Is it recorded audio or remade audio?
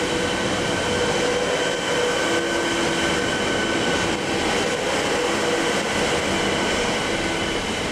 recorded